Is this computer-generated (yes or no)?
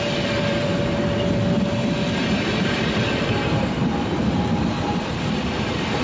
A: yes